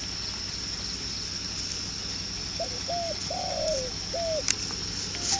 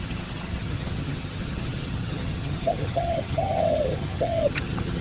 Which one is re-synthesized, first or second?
second